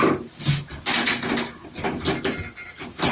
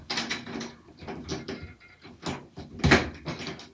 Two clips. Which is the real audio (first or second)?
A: first